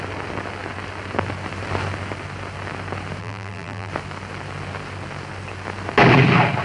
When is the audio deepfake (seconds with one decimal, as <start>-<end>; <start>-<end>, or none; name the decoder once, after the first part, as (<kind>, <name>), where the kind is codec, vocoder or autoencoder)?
3.2-3.9 (vocoder, BigVGAN v2)